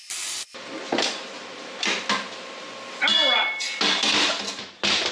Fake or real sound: real